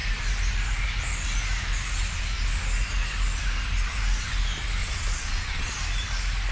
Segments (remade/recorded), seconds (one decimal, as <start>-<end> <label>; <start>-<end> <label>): 0.0-4.8 recorded; 4.8-5.7 remade; 5.7-6.5 recorded

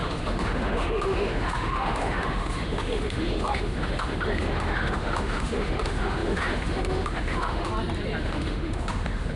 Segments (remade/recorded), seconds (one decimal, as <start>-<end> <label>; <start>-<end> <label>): 0.0-7.7 remade; 7.7-8.2 recorded; 8.2-9.4 remade

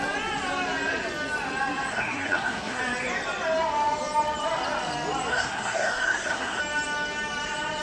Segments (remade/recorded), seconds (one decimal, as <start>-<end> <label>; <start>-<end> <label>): 0.0-1.9 recorded; 1.9-2.8 remade; 2.8-5.3 recorded; 5.3-6.6 remade; 6.6-7.8 recorded

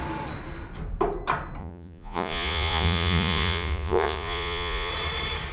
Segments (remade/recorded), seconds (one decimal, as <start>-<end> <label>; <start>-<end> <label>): 0.0-1.6 recorded; 1.6-4.9 remade; 4.9-5.5 recorded